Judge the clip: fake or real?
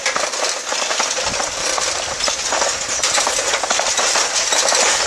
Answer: real